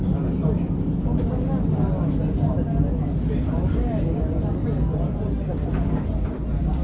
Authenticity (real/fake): real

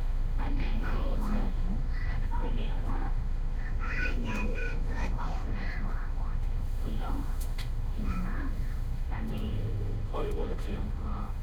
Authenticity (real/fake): fake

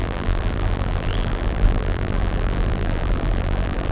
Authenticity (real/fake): fake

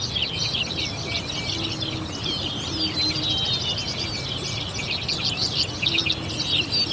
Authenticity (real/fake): real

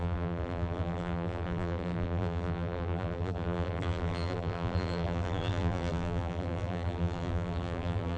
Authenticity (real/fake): fake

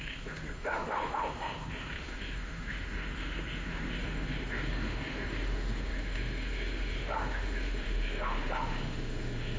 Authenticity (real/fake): fake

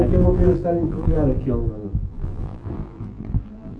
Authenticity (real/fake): fake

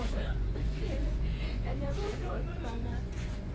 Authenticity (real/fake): fake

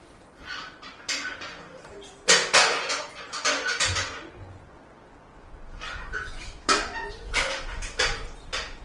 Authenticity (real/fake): fake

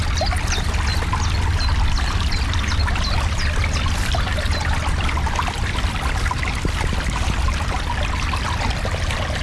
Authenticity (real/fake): real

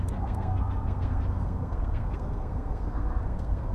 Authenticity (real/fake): fake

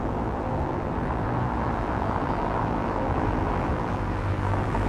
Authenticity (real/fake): fake